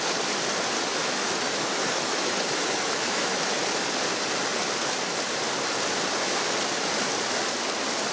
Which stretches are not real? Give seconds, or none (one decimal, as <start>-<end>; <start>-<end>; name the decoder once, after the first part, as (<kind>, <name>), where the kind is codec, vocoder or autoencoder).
0.9-3.6 (autoencoder, DAC-VAE)

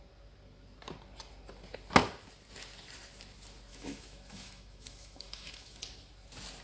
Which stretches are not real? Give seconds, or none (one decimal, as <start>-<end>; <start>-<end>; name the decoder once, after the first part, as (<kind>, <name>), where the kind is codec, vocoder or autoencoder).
3.7-5.8 (autoencoder, DAC-VAE)

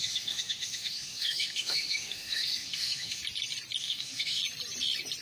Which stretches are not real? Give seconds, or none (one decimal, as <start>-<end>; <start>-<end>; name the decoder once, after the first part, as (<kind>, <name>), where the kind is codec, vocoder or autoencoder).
0.0-3.2 (autoencoder, DAC-VAE); 3.8-4.4

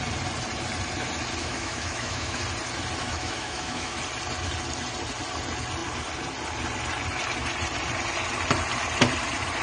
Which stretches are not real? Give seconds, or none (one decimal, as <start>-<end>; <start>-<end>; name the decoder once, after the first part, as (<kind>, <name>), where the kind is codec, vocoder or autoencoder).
1.4-2.4 (autoencoder, DAC-VAE); 3.0-4.0

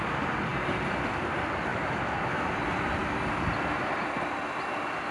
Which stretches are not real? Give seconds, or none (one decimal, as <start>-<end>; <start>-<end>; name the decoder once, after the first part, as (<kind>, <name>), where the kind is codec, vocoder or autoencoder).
1.7-2.4 (autoencoder, DAC-VAE)